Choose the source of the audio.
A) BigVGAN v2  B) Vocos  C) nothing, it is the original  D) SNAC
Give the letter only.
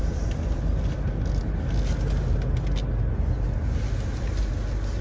C